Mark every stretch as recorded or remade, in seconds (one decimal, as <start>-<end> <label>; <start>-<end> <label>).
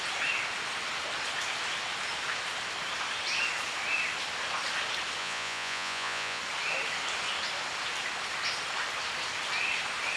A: 0.0-5.2 recorded; 5.2-6.4 remade; 6.4-10.2 recorded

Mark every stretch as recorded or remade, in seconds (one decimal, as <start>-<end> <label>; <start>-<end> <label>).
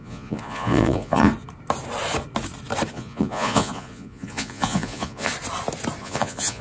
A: 0.0-1.3 remade; 1.3-2.9 recorded; 2.9-5.3 remade; 5.3-6.0 recorded; 6.0-6.6 remade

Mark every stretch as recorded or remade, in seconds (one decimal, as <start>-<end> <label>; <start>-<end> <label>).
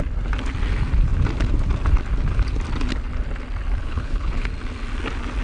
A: 0.0-3.8 recorded; 3.8-4.5 remade; 4.5-5.4 recorded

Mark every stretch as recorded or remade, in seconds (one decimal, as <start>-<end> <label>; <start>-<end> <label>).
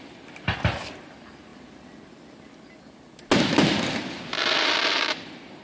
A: 0.0-5.6 recorded